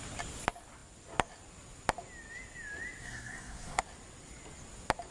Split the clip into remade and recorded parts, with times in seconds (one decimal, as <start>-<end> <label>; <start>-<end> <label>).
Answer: 0.0-3.0 recorded; 3.0-3.8 remade; 3.8-5.1 recorded